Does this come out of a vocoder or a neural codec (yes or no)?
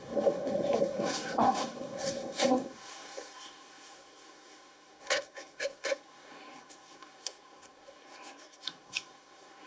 yes